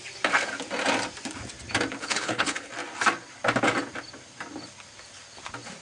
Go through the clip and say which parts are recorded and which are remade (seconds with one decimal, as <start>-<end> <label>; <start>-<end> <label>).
0.0-2.0 recorded; 2.0-2.7 remade; 2.7-5.8 recorded